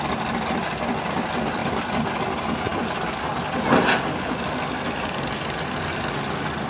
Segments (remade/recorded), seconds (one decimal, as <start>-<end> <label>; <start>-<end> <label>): 0.0-6.7 recorded